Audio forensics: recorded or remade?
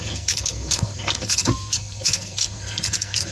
remade